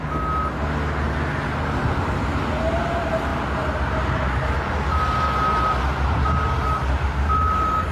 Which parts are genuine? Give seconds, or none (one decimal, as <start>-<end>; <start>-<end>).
0.0-7.9